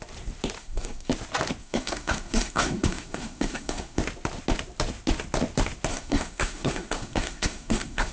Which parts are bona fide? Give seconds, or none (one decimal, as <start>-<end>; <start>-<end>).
0.0-0.6; 1.1-1.6; 4.0-5.9